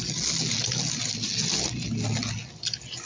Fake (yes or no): no